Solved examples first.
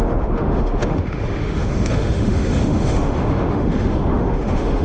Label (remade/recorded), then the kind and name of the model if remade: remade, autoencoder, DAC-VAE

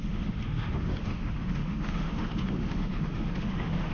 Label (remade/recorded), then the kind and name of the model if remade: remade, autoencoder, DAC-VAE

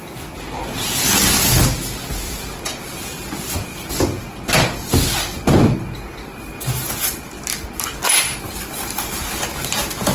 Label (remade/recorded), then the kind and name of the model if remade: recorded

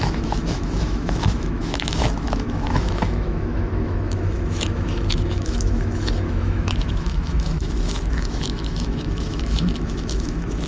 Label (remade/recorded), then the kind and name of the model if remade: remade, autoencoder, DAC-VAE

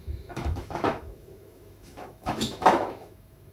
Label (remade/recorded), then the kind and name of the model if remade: remade, autoencoder, DAC-VAE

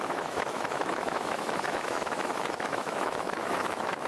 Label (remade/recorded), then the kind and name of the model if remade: remade, autoencoder, DAC-VAE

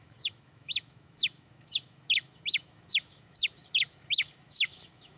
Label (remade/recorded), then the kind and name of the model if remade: remade, autoencoder, DAC-VAE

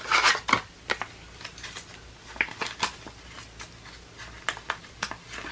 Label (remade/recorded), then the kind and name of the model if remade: recorded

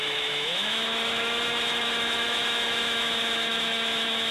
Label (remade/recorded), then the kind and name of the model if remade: remade, autoencoder, DAC-VAE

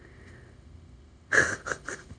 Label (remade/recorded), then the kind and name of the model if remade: remade, autoencoder, DAC-VAE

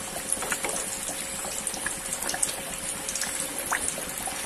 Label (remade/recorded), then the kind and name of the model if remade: recorded